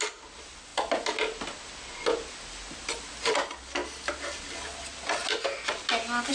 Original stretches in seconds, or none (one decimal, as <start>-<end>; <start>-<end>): 0.0-6.3